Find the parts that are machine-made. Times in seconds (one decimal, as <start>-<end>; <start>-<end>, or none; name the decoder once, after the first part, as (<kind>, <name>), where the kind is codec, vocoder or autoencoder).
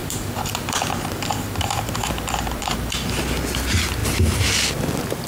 0.0-3.2 (vocoder, BigVGAN v2)